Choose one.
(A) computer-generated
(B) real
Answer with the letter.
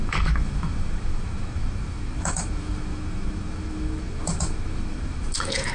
A